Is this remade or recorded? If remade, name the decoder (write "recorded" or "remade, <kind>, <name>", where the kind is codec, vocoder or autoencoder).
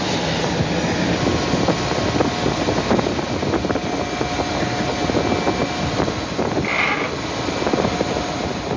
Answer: recorded